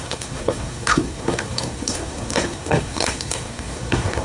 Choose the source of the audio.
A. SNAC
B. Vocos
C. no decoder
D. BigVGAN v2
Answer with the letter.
A